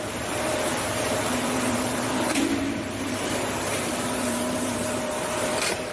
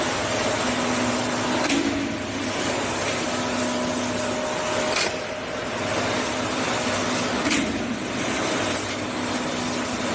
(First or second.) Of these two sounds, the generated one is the first